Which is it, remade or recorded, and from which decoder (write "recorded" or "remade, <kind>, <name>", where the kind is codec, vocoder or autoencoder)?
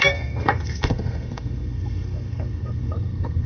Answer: remade, codec, SNAC